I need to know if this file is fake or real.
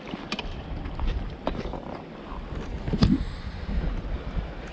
real